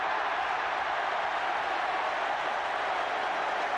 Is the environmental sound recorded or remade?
recorded